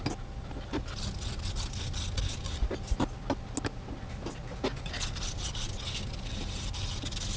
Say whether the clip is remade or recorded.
recorded